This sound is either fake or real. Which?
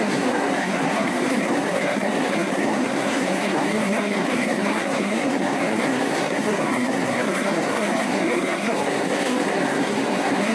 fake